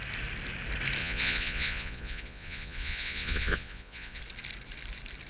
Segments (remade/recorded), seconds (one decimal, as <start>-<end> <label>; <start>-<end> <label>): 0.0-1.0 recorded; 1.0-4.2 remade; 4.2-5.3 recorded